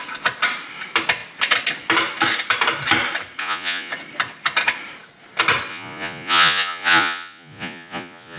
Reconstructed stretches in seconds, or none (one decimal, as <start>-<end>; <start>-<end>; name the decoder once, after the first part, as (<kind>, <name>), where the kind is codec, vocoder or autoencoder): 3.4-3.9 (vocoder, Vocos); 5.7-8.4